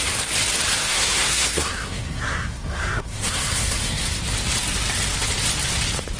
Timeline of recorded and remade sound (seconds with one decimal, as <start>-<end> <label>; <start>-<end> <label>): 0.0-0.8 recorded; 0.8-4.2 remade; 4.2-6.2 recorded